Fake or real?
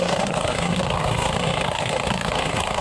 fake